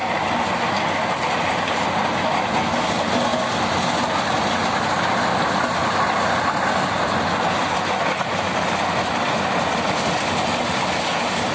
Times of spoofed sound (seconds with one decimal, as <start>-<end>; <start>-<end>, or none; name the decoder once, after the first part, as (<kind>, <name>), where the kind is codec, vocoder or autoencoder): none